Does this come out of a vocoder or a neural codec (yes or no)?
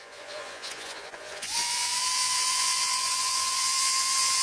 yes